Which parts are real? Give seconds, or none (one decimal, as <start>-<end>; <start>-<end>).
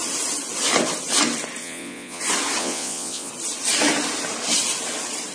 0.0-1.6; 2.2-2.6; 3.3-5.3